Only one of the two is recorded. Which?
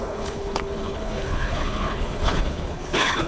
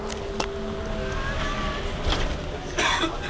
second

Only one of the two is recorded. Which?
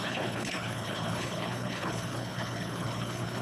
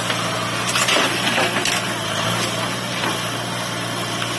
second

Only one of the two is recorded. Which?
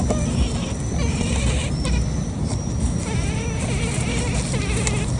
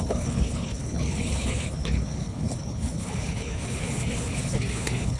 first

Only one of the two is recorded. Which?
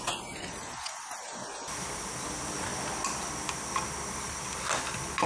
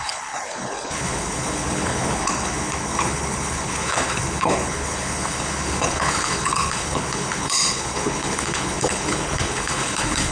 first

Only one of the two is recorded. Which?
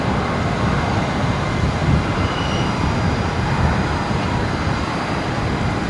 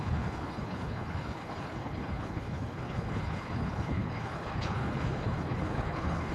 first